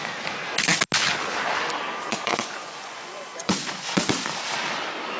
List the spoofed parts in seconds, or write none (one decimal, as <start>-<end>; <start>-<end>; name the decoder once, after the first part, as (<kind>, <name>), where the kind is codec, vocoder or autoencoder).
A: 2.1-4.1 (vocoder, Vocos)